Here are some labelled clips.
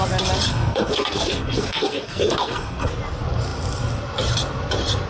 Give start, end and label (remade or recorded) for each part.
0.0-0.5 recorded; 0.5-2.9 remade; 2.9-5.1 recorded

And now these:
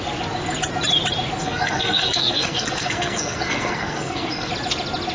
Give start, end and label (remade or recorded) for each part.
0.0-1.4 recorded; 1.4-4.5 remade; 4.5-5.1 recorded

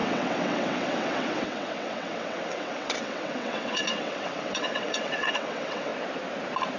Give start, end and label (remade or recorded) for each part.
0.0-5.9 remade; 5.9-6.8 recorded

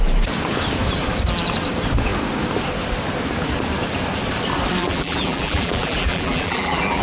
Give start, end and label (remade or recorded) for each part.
0.0-4.8 recorded; 4.8-7.0 remade